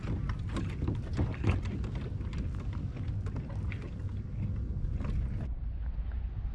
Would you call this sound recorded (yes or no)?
yes